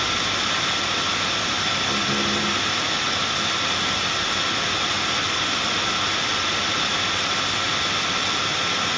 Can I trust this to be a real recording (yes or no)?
yes